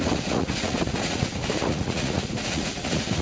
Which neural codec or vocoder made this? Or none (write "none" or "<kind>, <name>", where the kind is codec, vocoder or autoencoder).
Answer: vocoder, Vocos